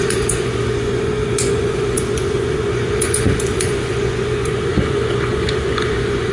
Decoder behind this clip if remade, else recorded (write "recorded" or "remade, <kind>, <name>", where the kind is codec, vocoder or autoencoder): remade, vocoder, Vocos